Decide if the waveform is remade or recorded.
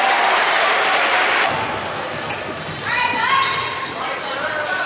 recorded